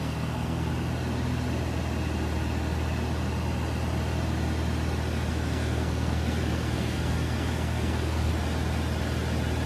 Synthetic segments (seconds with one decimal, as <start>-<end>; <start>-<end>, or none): 0.0-0.7; 5.3-8.3